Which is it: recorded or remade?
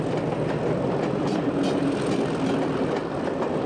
recorded